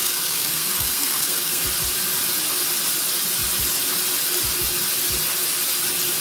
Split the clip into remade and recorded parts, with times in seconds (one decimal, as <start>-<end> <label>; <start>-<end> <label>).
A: 0.0-1.6 remade; 1.6-6.2 recorded

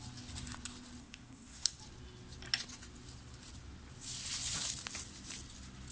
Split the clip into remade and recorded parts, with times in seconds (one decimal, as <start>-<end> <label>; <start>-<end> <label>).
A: 0.0-1.0 recorded; 1.0-1.8 remade; 1.8-5.9 recorded

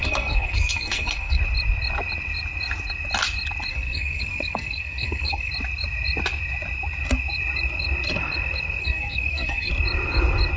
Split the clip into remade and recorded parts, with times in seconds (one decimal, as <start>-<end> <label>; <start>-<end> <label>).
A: 0.0-1.4 remade; 1.4-3.7 recorded; 3.7-5.5 remade; 5.5-8.8 recorded; 8.8-9.7 remade; 9.7-10.6 recorded